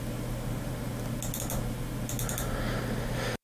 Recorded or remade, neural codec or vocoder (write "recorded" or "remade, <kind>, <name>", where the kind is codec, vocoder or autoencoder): recorded